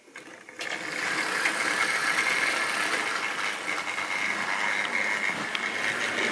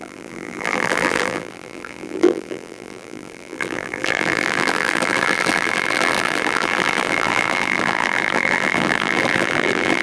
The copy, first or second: second